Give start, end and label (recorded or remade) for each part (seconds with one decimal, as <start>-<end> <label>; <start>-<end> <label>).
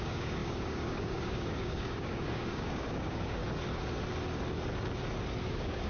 0.0-3.4 remade; 3.4-5.4 recorded; 5.4-5.9 remade